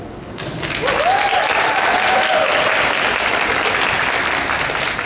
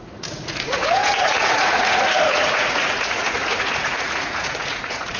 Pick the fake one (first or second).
second